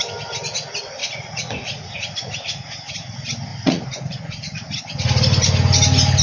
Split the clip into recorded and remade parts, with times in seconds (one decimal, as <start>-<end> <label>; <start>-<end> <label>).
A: 0.0-1.0 recorded; 1.0-2.9 remade; 2.9-3.5 recorded; 3.5-4.8 remade; 4.8-6.2 recorded